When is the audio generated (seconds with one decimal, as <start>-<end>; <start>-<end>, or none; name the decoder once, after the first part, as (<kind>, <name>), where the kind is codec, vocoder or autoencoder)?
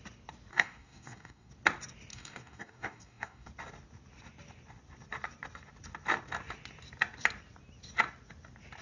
0.5-1.5 (codec, DAC); 2.1-3.5